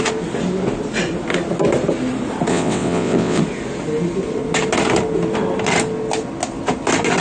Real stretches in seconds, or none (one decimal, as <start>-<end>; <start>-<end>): 0.0-2.5; 3.4-7.2